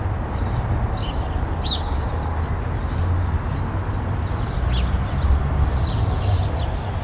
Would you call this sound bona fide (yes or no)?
yes